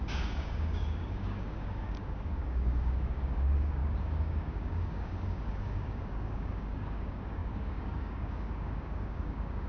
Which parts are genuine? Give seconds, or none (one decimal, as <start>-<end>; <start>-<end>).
none